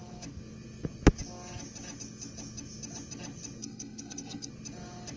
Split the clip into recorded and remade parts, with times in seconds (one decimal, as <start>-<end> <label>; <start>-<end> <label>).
0.0-3.6 recorded; 3.6-4.5 remade; 4.5-5.2 recorded